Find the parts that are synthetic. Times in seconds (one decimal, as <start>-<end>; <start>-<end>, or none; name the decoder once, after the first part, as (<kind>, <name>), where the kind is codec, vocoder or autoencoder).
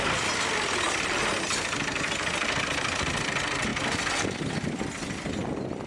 none